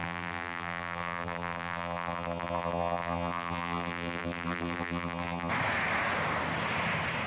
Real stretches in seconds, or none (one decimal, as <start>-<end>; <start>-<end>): 5.5-7.3